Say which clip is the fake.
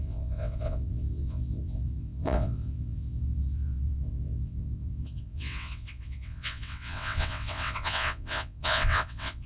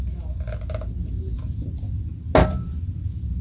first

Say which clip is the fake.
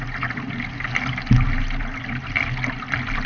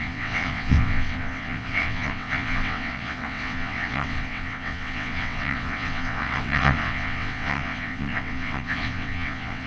second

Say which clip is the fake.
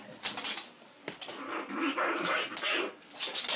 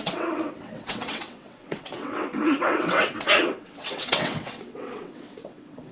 second